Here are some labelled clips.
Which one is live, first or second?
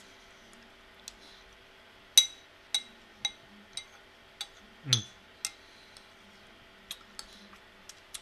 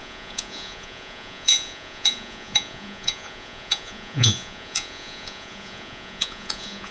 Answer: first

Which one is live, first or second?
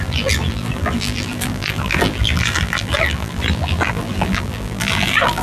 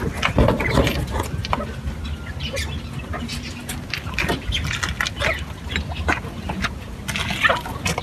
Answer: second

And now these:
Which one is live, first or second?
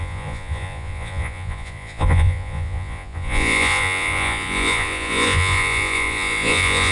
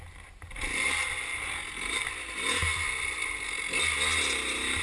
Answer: second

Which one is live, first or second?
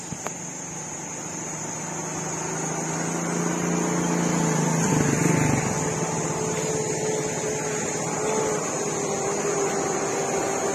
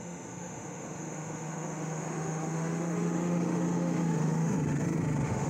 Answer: first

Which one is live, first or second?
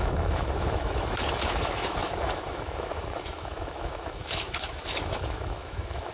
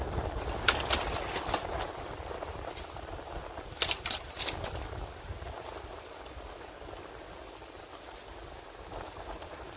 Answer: second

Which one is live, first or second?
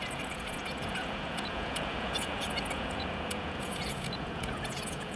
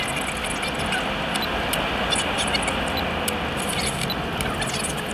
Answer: second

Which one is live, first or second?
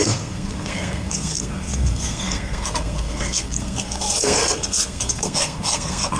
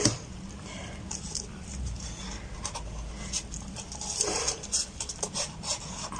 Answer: second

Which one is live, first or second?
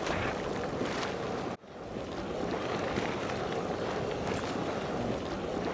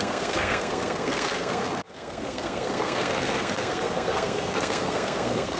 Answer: first